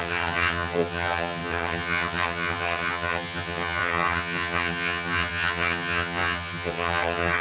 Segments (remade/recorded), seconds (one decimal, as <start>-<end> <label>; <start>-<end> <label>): 0.0-7.4 remade